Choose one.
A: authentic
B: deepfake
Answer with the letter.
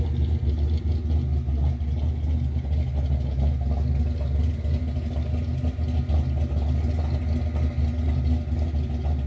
A